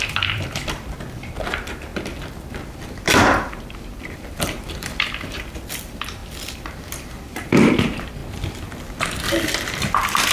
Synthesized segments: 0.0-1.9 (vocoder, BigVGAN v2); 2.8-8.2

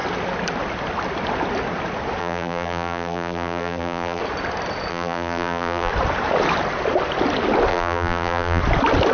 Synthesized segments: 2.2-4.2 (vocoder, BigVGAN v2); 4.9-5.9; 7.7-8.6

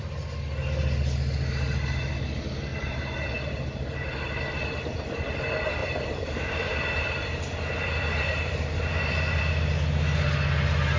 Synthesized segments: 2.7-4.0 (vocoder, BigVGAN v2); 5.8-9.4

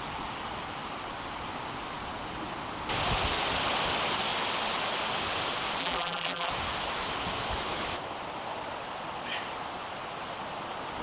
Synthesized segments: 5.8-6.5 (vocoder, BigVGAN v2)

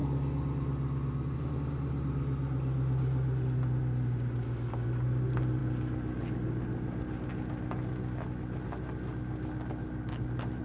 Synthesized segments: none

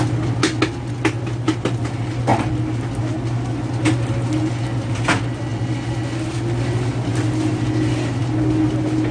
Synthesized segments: none